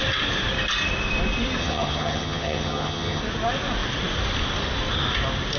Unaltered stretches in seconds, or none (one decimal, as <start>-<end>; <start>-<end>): 0.0-1.6; 3.2-5.6